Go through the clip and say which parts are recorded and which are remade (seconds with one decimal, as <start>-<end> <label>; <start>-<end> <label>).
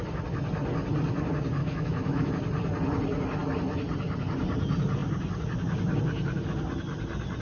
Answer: 0.0-1.6 recorded; 1.6-2.3 remade; 2.3-7.4 recorded